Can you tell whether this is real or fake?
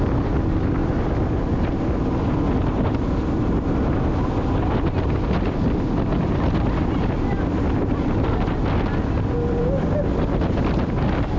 real